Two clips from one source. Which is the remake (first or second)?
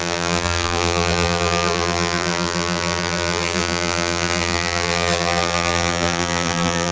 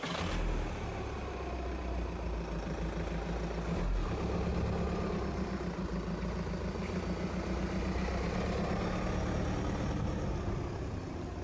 first